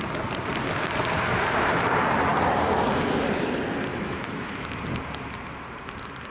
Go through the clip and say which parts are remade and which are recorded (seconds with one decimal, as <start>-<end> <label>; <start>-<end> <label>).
0.0-3.9 recorded; 3.9-4.8 remade; 4.8-6.3 recorded